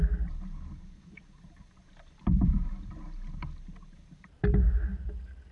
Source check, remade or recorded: recorded